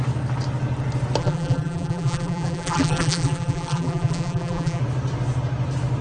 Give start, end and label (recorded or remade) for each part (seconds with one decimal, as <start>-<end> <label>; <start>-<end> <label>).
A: 0.0-1.2 recorded; 1.2-4.8 remade; 4.8-6.0 recorded

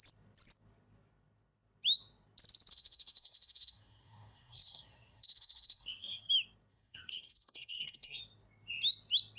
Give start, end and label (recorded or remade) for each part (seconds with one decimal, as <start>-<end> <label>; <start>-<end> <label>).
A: 0.0-2.7 recorded; 2.7-6.3 remade; 6.3-6.7 recorded; 6.7-8.2 remade; 8.2-9.4 recorded

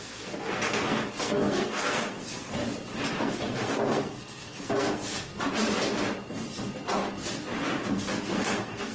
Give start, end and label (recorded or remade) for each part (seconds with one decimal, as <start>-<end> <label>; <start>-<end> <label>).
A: 0.0-2.6 remade; 2.6-3.1 recorded; 3.1-5.3 remade; 5.3-7.9 recorded; 7.9-8.9 remade